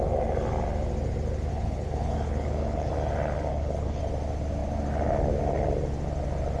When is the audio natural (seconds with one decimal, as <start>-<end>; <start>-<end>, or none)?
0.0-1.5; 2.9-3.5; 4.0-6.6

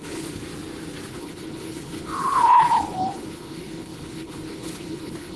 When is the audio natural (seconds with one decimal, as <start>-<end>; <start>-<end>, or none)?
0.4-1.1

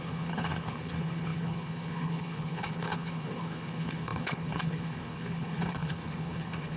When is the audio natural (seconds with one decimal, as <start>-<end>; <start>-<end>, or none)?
none

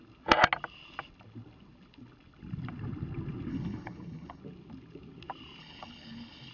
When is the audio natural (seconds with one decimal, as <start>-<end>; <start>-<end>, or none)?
0.0-3.5; 4.4-5.6